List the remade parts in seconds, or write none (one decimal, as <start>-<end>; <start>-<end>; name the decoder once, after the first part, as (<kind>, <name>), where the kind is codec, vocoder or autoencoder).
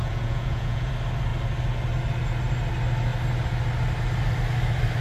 0.0-0.9 (vocoder, Vocos)